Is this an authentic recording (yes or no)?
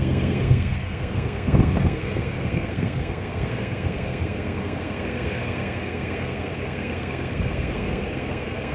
no